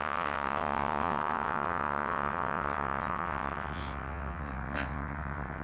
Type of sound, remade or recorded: remade